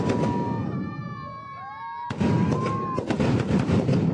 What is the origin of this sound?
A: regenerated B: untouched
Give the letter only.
B